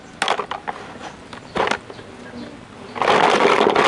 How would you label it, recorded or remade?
recorded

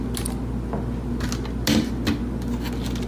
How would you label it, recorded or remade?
recorded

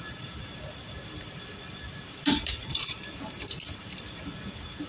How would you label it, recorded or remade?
remade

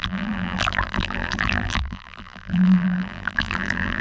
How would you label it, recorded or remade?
remade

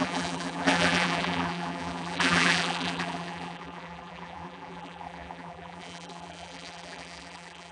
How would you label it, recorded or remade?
remade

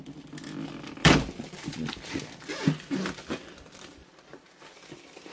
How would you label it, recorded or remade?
remade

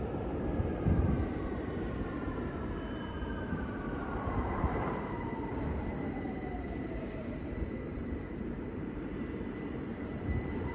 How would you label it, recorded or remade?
remade